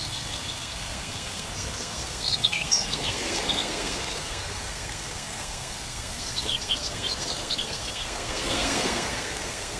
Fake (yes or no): yes